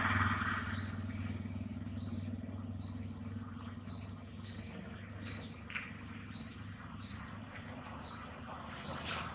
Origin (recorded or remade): recorded